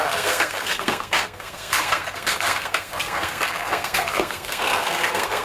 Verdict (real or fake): fake